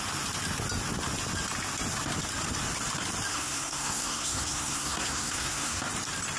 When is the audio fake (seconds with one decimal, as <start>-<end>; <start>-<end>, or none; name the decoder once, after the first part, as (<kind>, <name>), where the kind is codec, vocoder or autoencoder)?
3.3-5.8 (codec, SNAC)